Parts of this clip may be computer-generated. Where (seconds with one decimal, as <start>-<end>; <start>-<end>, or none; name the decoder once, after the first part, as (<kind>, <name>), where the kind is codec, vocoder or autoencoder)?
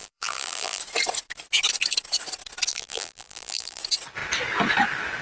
0.0-0.8 (vocoder, BigVGAN v2); 2.7-3.8